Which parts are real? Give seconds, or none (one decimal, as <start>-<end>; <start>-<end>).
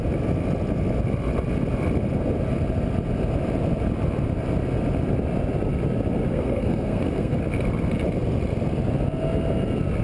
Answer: 0.0-6.3; 7.4-10.0